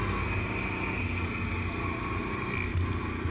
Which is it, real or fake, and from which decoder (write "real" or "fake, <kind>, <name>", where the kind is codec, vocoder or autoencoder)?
real